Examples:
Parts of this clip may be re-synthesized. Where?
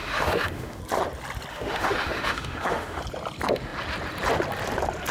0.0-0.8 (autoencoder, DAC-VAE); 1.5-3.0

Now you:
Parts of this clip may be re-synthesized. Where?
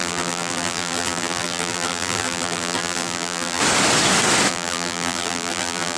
0.0-3.6 (vocoder, BigVGAN v2); 4.5-6.0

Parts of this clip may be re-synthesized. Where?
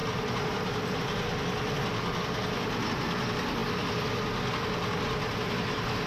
0.0-1.0 (vocoder, BigVGAN v2)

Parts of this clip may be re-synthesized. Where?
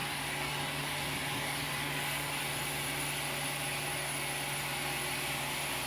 0.0-2.4 (codec, DAC)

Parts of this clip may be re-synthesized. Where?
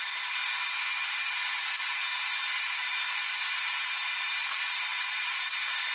4.9-5.4 (vocoder, BigVGAN v2)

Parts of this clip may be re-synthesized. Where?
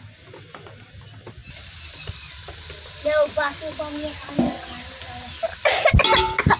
none